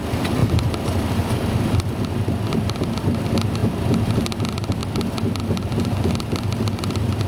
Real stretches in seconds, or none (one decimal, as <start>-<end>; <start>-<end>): 4.8-5.4